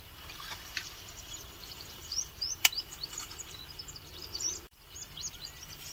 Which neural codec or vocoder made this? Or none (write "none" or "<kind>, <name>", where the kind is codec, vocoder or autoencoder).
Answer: vocoder, BigVGAN v2